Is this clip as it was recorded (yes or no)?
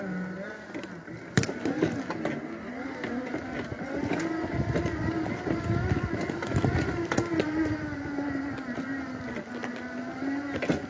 yes